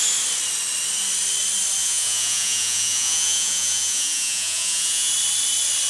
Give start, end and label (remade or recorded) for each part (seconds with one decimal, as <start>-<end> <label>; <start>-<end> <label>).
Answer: 0.0-1.8 recorded; 1.8-5.1 remade; 5.1-5.9 recorded